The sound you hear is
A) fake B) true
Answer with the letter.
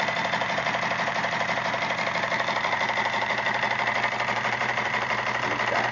A